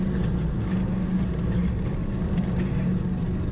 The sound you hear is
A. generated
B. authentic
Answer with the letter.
B